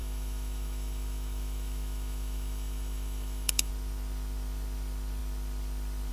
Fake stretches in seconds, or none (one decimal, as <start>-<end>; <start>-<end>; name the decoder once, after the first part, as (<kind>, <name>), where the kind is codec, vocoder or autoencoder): 0.0-3.7 (autoencoder, DAC-VAE)